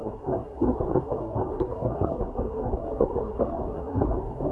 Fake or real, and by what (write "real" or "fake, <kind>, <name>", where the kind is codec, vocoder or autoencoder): fake, codec, SNAC